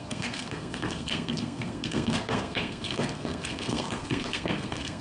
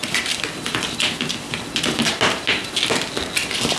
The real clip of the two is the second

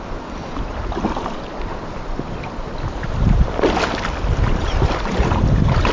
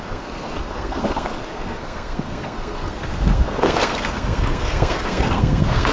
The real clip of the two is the first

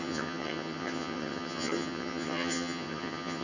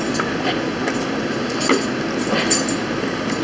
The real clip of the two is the second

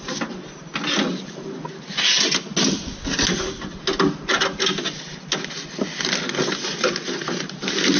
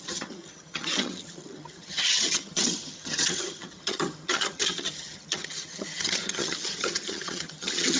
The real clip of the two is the first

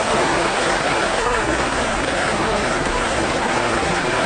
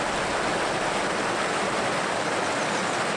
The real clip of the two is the second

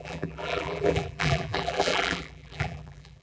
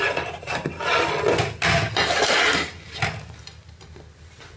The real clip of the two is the second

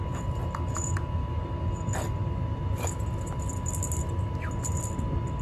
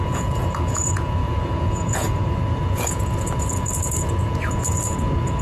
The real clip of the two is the first